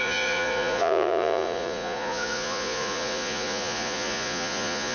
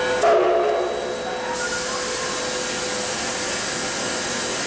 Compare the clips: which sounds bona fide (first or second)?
second